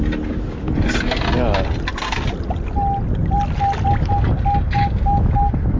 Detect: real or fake real